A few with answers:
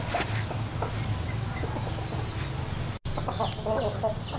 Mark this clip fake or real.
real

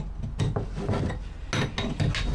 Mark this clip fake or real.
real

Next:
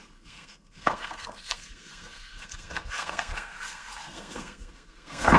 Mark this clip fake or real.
fake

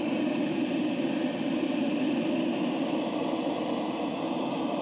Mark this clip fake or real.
real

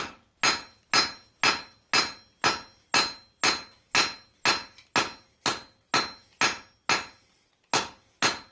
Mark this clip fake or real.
real